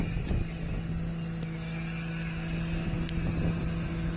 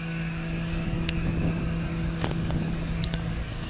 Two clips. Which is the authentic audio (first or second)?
first